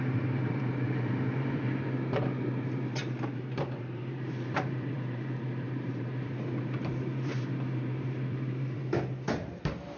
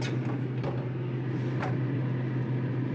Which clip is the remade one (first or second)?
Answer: first